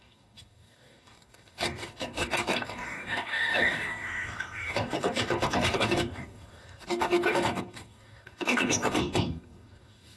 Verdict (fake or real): fake